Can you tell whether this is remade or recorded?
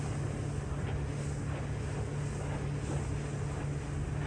recorded